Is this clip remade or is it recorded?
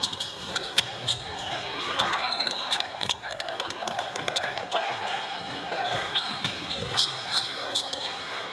remade